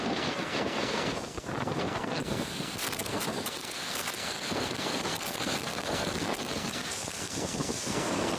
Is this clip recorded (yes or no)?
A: no